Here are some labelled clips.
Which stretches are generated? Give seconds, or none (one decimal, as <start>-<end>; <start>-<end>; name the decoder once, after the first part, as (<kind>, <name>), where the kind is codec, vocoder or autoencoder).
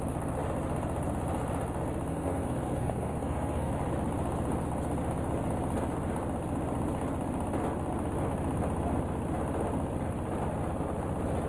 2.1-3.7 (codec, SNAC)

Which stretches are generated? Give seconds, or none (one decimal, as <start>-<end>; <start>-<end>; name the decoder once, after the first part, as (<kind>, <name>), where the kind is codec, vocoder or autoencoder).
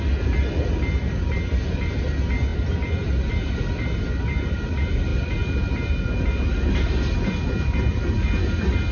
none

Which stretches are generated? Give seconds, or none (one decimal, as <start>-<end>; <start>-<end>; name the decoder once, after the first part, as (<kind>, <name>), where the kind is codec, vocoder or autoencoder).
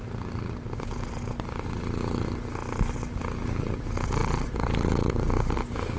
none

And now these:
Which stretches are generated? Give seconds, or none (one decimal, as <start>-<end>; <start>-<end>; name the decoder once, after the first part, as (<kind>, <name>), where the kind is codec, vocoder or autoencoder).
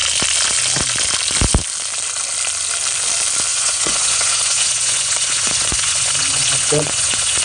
3.5-7.4 (vocoder, Vocos)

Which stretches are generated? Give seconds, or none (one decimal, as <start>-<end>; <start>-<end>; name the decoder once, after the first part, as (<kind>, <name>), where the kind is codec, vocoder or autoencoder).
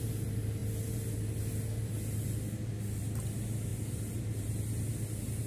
3.7-4.9 (vocoder, BigVGAN v2)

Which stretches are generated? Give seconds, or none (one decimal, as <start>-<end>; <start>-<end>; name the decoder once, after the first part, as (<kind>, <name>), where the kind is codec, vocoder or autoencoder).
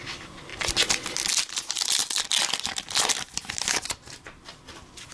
none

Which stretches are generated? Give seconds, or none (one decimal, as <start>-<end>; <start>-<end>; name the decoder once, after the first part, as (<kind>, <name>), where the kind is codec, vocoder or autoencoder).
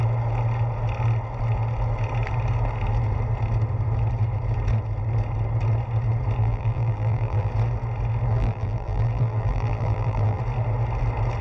6.4-7.5 (vocoder, BigVGAN v2); 8.3-10.4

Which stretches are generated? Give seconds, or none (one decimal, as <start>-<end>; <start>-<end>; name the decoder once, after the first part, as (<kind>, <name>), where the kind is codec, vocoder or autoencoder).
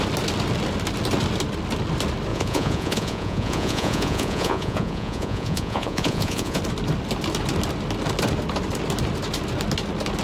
2.3-6.6 (vocoder, Vocos)